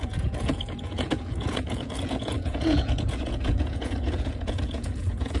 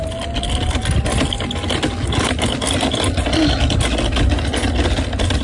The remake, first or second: first